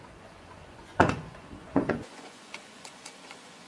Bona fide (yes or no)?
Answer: no